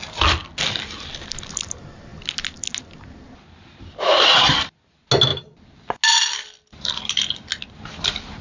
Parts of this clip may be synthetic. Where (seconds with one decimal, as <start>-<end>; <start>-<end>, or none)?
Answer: none